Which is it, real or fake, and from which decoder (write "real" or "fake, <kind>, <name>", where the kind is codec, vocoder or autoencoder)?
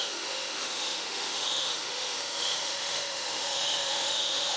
fake, autoencoder, DAC-VAE